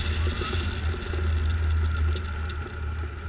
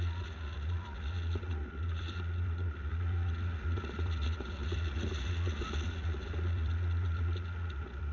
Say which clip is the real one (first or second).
first